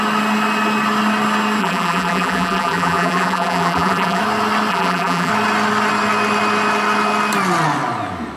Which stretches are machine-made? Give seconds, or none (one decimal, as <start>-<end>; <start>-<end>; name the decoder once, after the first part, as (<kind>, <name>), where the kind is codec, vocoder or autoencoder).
1.6-4.2 (vocoder, BigVGAN v2); 4.7-5.3

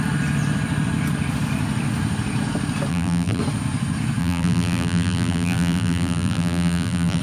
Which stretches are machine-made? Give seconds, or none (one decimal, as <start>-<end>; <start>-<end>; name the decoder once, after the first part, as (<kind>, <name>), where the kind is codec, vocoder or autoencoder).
2.9-3.4 (vocoder, BigVGAN v2); 4.2-7.2

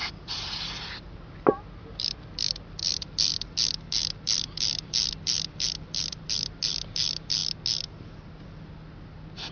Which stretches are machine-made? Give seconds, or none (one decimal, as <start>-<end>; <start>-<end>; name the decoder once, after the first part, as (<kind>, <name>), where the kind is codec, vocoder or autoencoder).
none

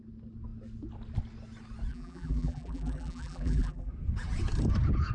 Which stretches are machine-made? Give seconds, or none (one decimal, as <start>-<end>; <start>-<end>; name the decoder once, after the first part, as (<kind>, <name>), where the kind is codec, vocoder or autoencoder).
1.9-3.9 (vocoder, BigVGAN v2)

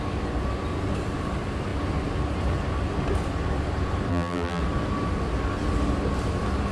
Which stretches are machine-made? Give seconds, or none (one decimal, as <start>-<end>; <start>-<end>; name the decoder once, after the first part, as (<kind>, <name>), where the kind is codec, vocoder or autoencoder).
4.1-4.6 (vocoder, BigVGAN v2)

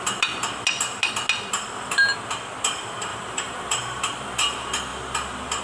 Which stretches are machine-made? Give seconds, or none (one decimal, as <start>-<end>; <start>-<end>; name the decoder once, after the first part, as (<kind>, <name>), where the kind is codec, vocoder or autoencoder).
3.1-4.0 (vocoder, BigVGAN v2)

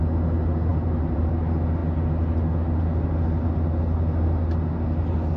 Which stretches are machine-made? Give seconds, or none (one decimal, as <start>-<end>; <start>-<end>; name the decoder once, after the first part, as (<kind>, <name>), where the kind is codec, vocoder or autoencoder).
0.7-1.3 (vocoder, BigVGAN v2)

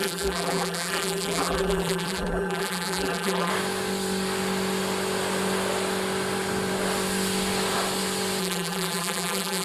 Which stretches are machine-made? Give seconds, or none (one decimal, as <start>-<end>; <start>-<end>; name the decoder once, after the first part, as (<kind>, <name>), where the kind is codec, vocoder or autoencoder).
0.0-3.5 (vocoder, BigVGAN v2); 8.4-9.6